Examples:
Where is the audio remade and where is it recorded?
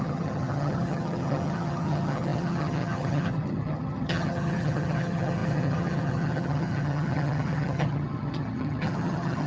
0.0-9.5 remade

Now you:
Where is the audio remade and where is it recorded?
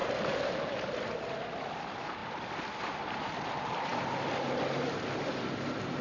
0.0-6.0 recorded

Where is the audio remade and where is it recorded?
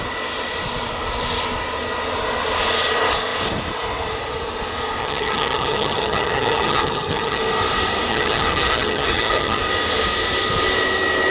0.0-5.0 recorded; 5.0-7.4 remade; 7.4-8.1 recorded; 8.1-9.6 remade; 9.6-11.3 recorded